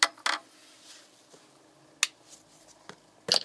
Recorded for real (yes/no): yes